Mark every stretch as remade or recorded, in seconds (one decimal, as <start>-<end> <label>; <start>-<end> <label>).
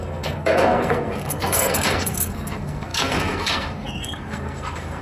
0.0-5.0 remade